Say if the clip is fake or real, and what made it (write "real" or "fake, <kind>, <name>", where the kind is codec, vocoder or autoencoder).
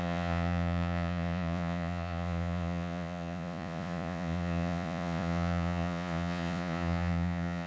fake, vocoder, Vocos